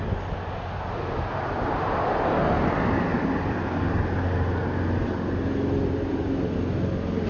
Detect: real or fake real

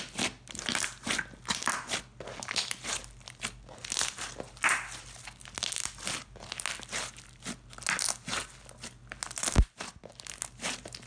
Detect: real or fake real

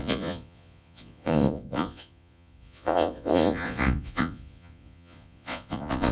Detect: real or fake fake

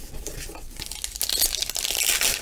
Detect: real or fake real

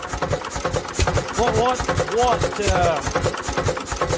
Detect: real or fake real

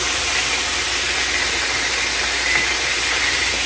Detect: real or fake real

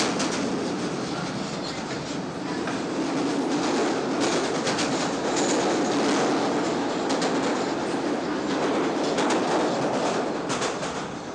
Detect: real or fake real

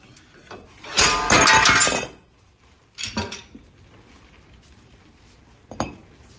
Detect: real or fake real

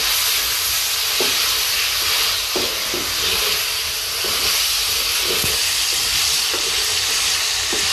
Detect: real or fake real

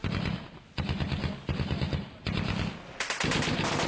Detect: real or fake real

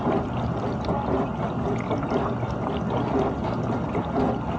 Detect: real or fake real